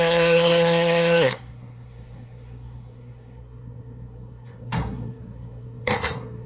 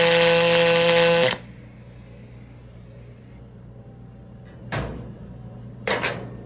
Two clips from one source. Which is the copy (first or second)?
first